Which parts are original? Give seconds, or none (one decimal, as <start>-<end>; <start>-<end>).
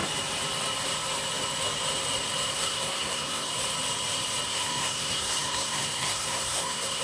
0.0-2.5; 3.5-4.5